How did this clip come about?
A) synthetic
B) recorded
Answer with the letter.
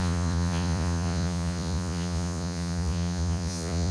A